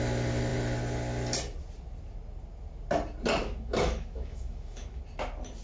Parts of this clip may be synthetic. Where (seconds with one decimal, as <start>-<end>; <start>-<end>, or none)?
3.4-5.0